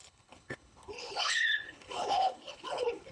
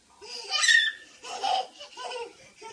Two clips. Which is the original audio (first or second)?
second